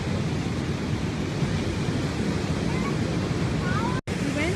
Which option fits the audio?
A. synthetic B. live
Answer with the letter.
B